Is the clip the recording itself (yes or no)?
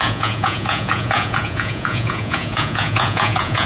no